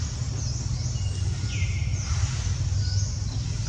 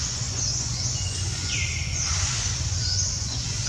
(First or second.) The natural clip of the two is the first